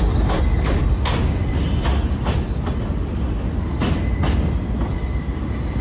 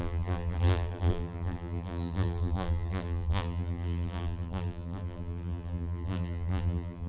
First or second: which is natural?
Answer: first